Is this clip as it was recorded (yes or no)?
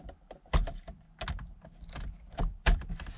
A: yes